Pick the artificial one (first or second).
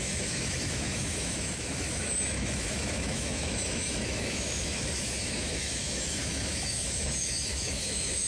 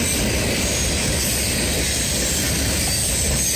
first